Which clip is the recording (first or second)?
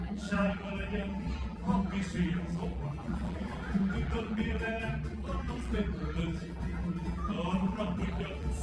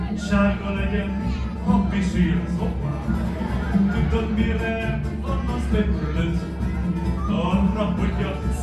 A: second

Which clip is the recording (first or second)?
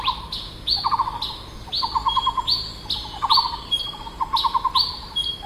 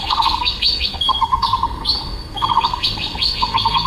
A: first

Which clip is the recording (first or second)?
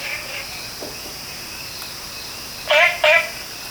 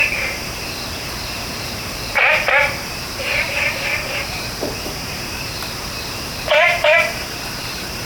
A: first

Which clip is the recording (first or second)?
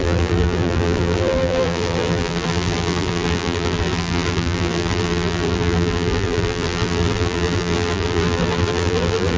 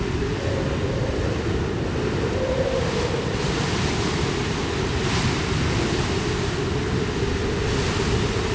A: second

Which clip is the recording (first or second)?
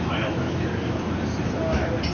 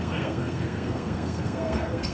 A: first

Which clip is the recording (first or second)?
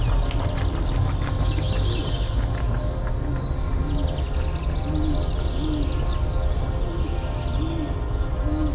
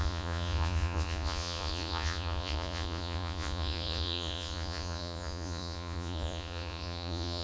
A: first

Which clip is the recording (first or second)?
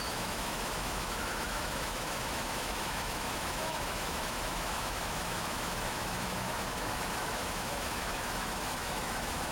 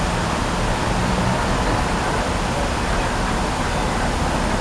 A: second